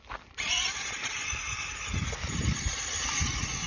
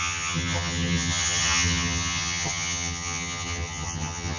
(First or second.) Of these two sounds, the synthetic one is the second